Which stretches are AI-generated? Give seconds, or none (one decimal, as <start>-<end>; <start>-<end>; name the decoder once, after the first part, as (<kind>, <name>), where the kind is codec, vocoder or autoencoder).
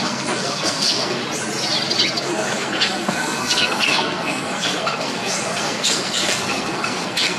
0.0-1.2 (codec, SNAC); 2.2-7.4